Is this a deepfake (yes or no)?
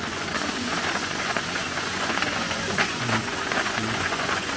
yes